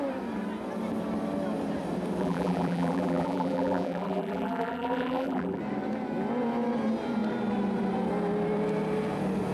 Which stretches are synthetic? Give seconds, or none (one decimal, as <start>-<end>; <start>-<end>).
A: 2.2-5.6